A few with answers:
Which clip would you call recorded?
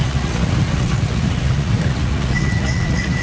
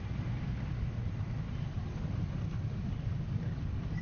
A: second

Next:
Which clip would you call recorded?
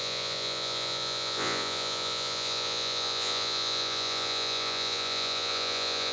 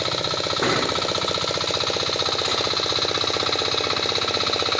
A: second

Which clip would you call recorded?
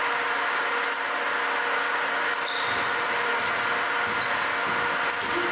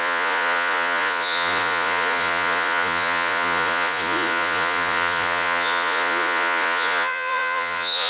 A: first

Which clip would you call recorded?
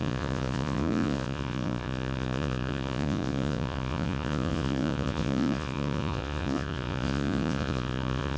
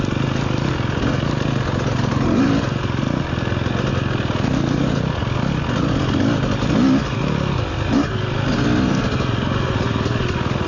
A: second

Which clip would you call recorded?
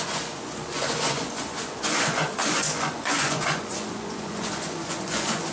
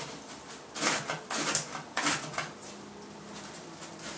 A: second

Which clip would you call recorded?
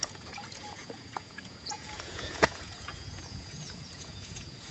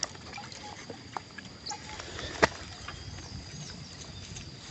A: second